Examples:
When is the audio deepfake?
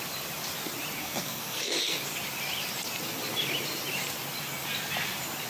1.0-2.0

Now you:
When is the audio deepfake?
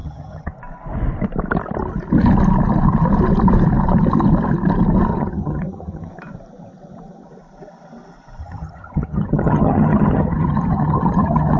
0.0-0.5; 5.1-6.1; 8.4-11.6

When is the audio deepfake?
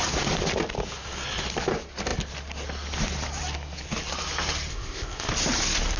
4.7-5.3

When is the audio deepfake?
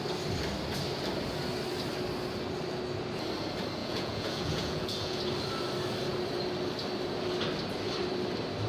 3.8-5.2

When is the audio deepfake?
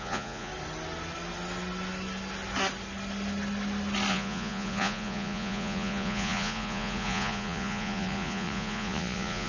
0.0-0.5; 4.1-9.5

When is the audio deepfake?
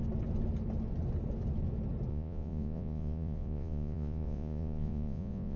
2.1-5.6